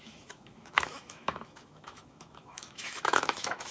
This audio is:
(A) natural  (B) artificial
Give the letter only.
B